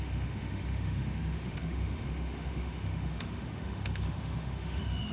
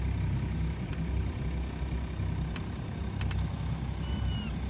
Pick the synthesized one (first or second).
first